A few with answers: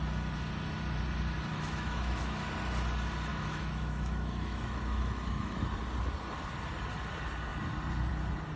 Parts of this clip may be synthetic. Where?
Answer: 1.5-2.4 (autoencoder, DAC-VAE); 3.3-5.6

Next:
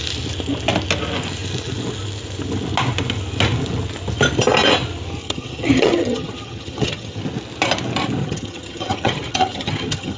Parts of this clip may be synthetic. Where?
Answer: 5.2-7.2 (vocoder, HiFi-GAN); 8.2-10.2

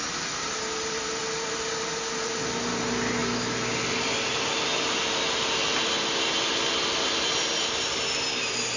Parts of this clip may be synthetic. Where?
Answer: none

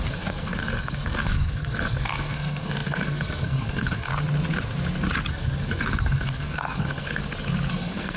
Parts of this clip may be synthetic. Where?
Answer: 0.0-4.1 (codec, SNAC); 5.3-7.2; 7.7-8.2

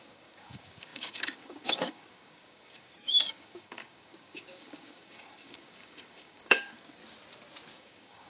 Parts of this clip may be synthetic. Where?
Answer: 0.0-7.0 (codec, DAC); 7.7-8.3

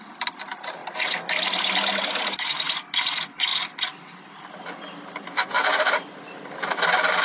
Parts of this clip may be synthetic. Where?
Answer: none